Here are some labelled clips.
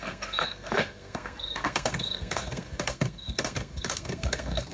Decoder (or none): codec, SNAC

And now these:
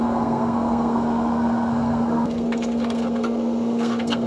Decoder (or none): codec, SNAC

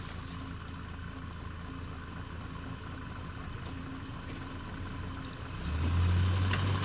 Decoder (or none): none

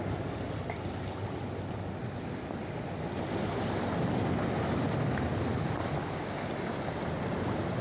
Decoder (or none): none